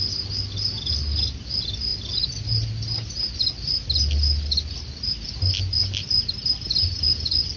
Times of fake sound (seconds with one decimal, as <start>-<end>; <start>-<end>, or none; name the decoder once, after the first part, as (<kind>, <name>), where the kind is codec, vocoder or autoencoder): none